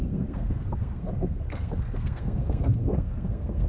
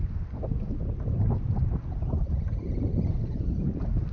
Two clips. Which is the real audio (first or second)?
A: second